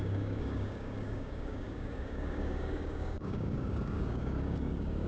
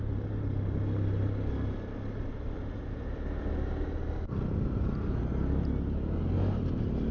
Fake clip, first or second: first